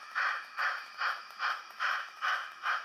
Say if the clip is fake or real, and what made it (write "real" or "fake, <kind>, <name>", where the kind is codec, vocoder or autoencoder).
fake, autoencoder, DAC-VAE